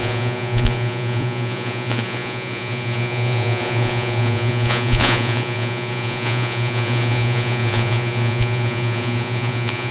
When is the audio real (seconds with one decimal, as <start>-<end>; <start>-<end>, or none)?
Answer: none